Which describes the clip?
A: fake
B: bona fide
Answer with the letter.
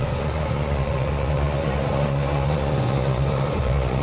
A